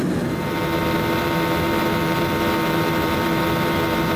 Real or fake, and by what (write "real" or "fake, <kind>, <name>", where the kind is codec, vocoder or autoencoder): fake, vocoder, BigVGAN v2